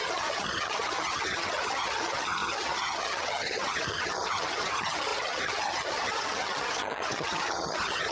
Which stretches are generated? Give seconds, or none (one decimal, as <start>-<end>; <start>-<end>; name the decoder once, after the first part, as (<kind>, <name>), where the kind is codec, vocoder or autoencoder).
0.0-8.1 (vocoder, HiFi-GAN)